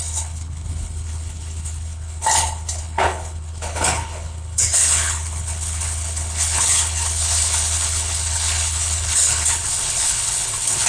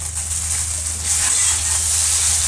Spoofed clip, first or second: first